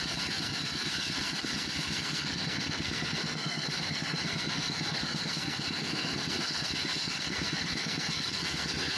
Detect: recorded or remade remade